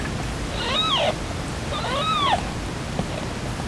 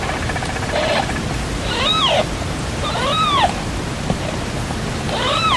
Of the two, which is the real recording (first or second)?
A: first